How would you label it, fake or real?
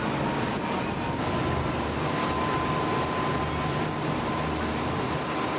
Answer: real